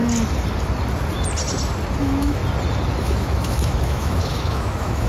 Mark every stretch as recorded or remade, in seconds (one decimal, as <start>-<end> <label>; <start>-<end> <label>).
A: 0.0-2.0 recorded; 2.0-2.4 remade; 2.4-3.0 recorded; 3.0-5.1 remade